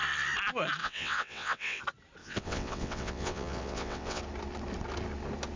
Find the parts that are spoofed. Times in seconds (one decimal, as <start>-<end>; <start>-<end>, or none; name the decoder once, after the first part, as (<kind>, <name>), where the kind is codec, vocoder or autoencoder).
0.8-1.8 (vocoder, WaveNeXt); 2.2-4.2